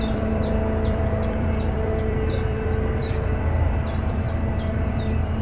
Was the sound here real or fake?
fake